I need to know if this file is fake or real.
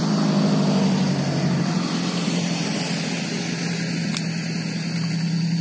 real